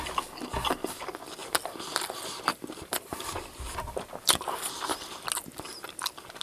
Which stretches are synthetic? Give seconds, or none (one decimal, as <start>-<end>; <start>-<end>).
1.4-5.2